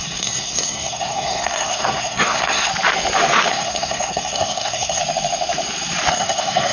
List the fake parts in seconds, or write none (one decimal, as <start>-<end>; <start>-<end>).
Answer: 0.0-2.7; 3.5-5.0; 6.1-6.7